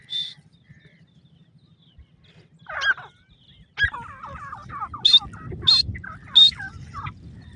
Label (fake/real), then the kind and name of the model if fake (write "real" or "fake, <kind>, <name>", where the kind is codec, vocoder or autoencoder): real